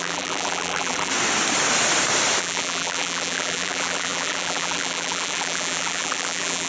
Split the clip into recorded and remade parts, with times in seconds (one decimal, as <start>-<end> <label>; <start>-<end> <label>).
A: 0.0-1.1 remade; 1.1-2.4 recorded; 2.4-6.7 remade